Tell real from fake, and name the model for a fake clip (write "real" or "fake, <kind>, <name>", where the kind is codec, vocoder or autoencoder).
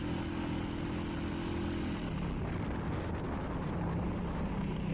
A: real